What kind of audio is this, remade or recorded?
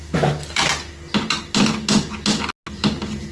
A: recorded